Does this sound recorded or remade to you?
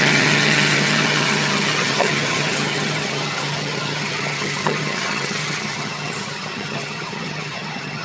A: remade